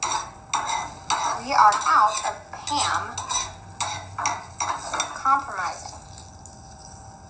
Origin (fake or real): real